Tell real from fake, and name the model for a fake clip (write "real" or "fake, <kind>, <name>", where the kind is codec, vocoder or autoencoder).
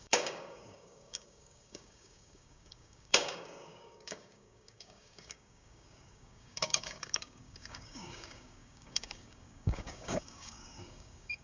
fake, codec, DAC